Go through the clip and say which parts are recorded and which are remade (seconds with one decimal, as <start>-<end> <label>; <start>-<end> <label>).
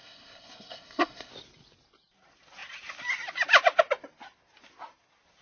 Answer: 0.0-1.3 remade; 1.3-5.4 recorded